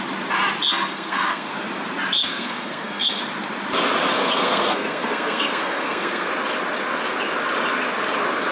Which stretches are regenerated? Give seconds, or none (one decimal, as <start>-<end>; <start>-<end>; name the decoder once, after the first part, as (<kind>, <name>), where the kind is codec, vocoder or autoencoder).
0.7-1.5 (codec, SNAC); 2.2-3.2; 4.1-6.3